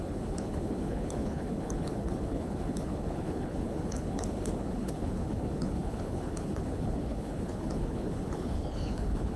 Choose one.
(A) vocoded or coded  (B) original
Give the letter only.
A